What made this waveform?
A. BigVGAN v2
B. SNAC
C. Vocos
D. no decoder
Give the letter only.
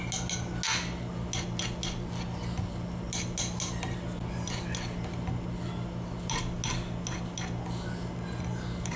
D